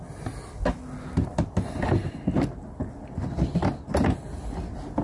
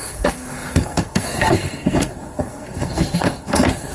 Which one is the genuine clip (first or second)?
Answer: first